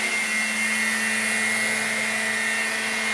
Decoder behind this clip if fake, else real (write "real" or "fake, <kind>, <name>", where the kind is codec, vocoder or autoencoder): real